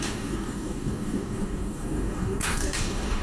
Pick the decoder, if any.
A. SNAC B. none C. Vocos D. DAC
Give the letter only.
D